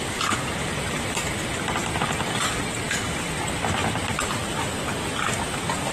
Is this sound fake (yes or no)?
no